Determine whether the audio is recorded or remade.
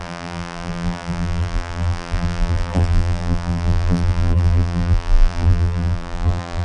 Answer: remade